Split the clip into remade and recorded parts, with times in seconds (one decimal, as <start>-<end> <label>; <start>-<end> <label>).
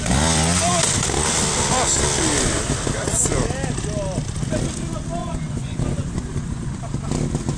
0.0-5.2 recorded; 5.2-6.8 remade; 6.8-7.6 recorded